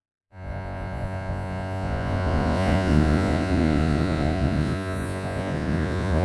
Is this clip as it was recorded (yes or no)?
no